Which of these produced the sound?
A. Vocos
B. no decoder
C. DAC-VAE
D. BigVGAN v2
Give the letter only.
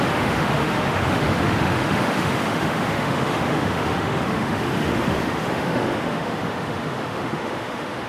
C